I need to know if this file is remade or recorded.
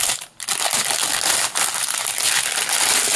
recorded